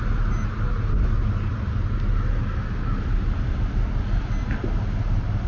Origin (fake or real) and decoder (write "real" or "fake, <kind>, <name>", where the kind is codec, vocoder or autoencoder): real